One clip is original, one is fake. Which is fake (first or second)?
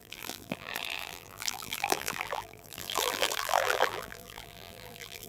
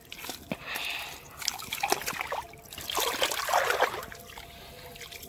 first